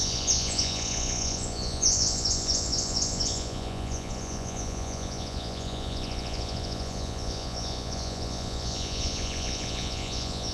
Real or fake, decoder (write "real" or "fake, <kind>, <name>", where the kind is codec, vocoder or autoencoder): fake, vocoder, Vocos